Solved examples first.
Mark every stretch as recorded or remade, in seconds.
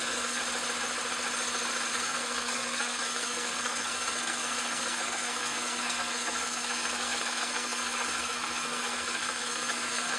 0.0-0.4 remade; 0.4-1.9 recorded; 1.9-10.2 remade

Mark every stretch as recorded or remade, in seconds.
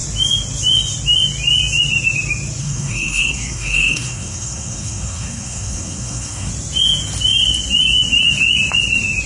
0.0-2.6 recorded; 2.6-6.5 remade; 6.5-9.3 recorded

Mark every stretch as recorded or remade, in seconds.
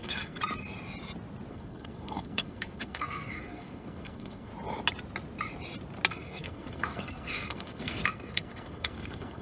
0.0-0.4 remade; 0.4-1.5 recorded; 1.5-4.5 remade; 4.5-6.1 recorded; 6.1-9.4 remade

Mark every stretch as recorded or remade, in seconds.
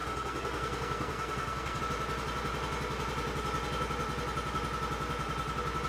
0.0-1.8 remade; 1.8-5.9 recorded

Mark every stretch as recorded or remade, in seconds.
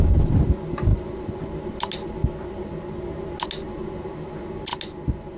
0.0-5.4 recorded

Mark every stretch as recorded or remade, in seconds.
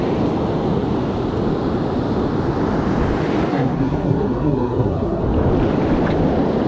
0.0-3.5 recorded; 3.5-5.2 remade; 5.2-6.7 recorded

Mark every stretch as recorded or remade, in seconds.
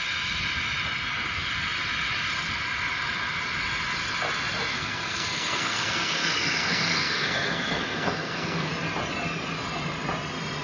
0.0-4.7 recorded; 4.7-8.7 remade; 8.7-10.6 recorded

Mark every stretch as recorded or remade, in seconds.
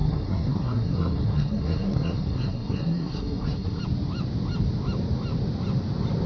0.0-3.8 remade; 3.8-6.3 recorded